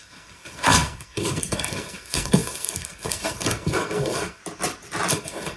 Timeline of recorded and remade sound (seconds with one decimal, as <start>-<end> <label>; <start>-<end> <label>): 0.0-4.4 remade; 4.4-5.1 recorded; 5.1-5.6 remade